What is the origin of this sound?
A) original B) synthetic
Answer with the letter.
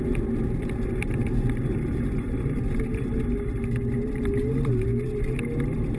A